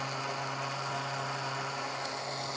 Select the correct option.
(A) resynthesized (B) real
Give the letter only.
B